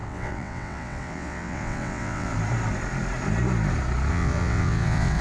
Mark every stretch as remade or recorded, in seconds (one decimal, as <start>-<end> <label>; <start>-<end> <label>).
0.0-2.3 remade; 2.3-4.1 recorded; 4.1-5.2 remade